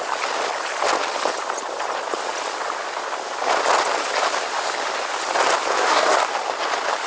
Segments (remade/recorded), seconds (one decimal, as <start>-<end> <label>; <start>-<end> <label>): 0.0-5.8 recorded; 5.8-6.3 remade; 6.3-7.1 recorded